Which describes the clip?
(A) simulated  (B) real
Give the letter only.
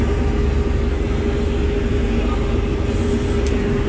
B